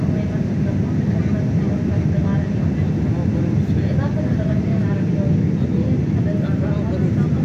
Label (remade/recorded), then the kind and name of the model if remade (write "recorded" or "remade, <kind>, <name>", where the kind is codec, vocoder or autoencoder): recorded